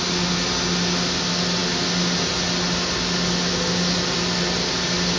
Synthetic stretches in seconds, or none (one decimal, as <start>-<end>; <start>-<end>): none